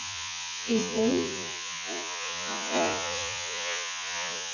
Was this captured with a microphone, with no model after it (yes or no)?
no